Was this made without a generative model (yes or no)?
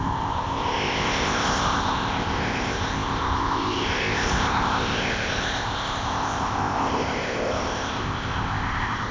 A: no